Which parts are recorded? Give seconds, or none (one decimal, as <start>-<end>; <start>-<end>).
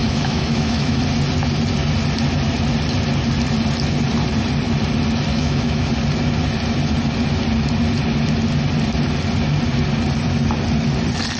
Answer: 1.0-5.3; 5.9-11.4